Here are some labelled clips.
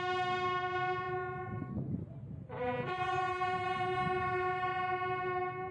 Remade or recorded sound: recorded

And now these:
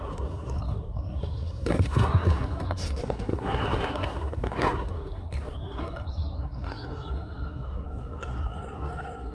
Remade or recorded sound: remade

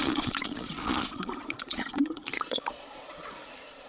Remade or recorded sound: remade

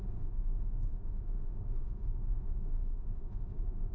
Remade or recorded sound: remade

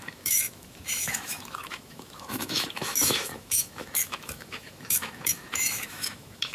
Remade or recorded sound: remade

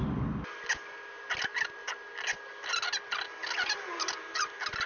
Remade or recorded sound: recorded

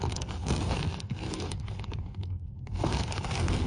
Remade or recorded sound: remade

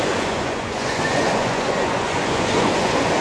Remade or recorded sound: remade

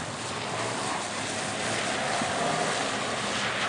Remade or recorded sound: recorded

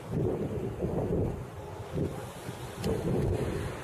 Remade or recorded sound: recorded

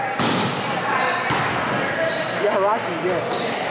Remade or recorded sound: recorded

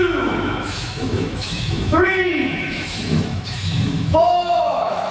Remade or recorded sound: remade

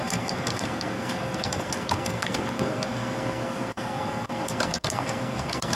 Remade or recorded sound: remade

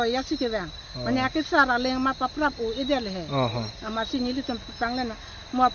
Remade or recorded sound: recorded